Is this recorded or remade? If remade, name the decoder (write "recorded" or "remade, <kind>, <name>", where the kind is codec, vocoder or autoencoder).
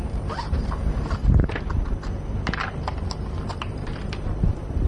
remade, vocoder, BigVGAN v2